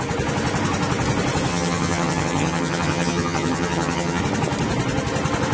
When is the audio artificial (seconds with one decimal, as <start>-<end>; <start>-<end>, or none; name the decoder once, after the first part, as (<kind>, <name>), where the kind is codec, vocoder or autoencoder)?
1.5-4.2 (vocoder, HiFi-GAN)